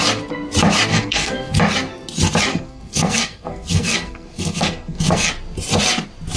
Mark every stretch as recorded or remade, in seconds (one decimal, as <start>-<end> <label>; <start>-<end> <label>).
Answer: 0.0-0.9 recorded; 0.9-1.6 remade; 1.6-2.5 recorded; 2.5-5.3 remade; 5.3-6.4 recorded